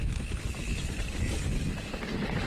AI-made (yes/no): no